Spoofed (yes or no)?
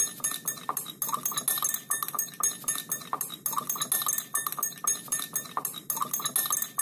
no